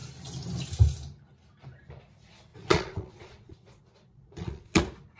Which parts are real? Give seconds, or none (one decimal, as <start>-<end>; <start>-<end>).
0.0-2.5; 4.8-5.2